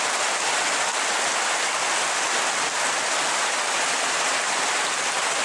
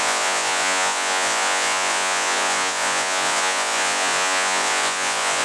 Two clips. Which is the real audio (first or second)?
first